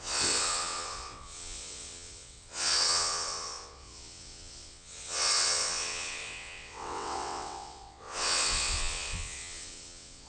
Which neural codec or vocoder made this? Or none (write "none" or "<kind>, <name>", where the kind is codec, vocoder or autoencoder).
vocoder, WaveNeXt